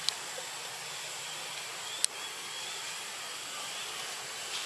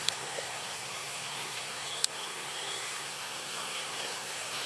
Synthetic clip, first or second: second